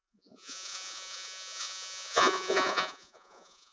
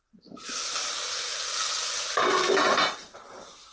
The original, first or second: second